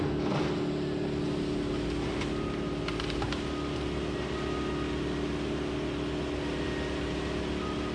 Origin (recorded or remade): recorded